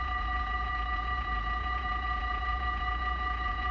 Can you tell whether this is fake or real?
fake